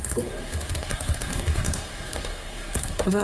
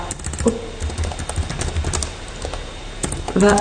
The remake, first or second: first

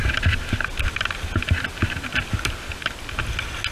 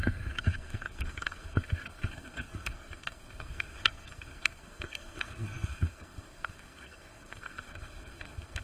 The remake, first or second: second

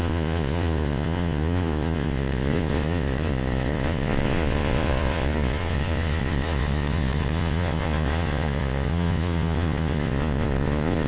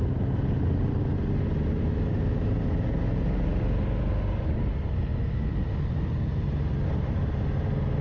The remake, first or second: first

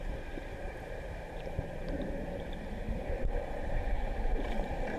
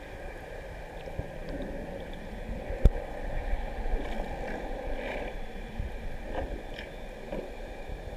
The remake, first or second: first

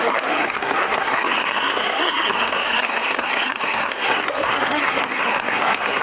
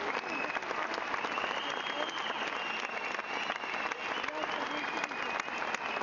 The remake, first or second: first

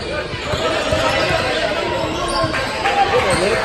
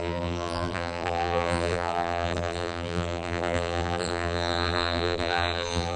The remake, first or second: second